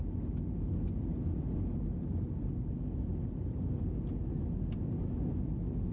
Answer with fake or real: real